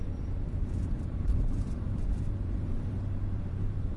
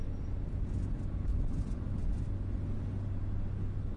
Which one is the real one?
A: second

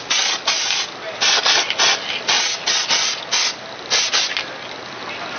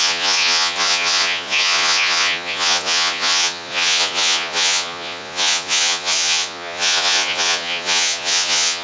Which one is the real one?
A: first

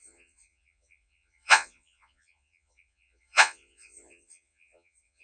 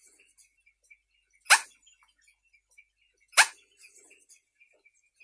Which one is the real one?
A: second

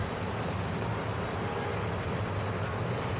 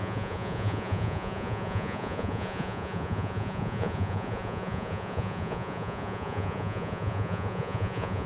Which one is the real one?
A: first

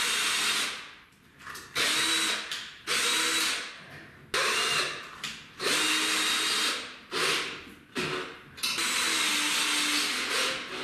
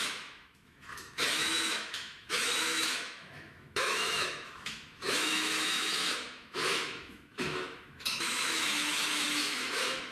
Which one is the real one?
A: first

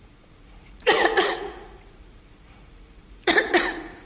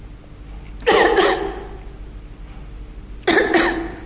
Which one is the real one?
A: second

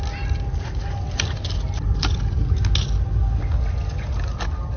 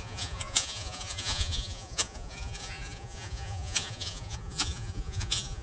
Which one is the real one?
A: first